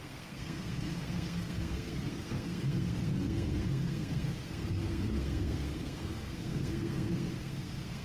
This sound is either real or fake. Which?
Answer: fake